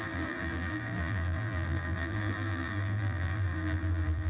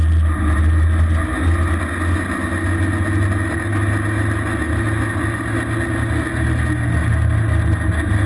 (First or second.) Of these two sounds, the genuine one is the second